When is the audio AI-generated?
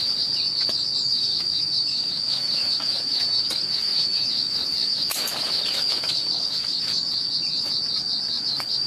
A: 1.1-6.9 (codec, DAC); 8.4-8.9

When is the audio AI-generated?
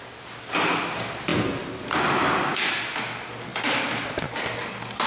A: none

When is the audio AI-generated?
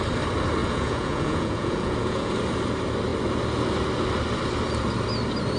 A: 0.6-2.3 (vocoder, Vocos)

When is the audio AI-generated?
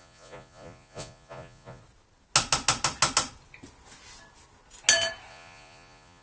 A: 0.0-1.8 (vocoder, Vocos); 5.3-6.2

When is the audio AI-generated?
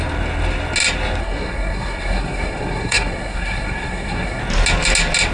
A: 1.2-4.4 (codec, SNAC)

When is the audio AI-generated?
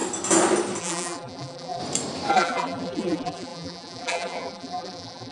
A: 0.8-1.8 (vocoder, BigVGAN v2); 2.3-5.3